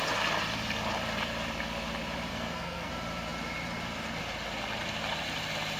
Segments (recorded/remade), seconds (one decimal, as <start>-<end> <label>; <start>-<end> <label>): 0.0-2.3 recorded; 2.3-2.9 remade; 2.9-5.8 recorded